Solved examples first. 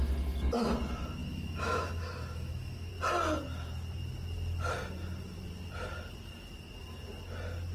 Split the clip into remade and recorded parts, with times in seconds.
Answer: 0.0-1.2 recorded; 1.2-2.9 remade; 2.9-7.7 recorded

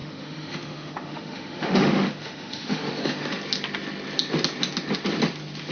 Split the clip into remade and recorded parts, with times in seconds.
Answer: 0.0-3.4 remade; 3.4-5.7 recorded